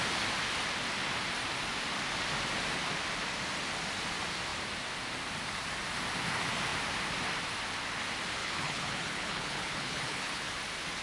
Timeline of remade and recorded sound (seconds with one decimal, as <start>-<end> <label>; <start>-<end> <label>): 0.0-8.4 recorded; 8.4-10.5 remade; 10.5-11.0 recorded